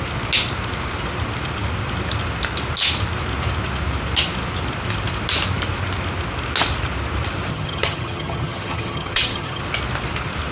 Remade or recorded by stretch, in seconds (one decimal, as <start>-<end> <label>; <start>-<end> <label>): 0.0-7.5 recorded; 7.5-9.6 remade; 9.6-10.5 recorded